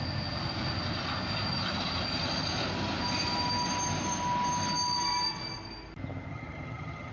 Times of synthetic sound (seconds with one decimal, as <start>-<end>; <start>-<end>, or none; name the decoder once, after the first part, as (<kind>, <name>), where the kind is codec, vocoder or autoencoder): 6.3-7.1 (vocoder, HiFi-GAN)